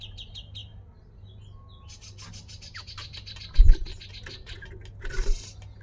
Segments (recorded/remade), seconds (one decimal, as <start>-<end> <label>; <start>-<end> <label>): 0.0-5.8 recorded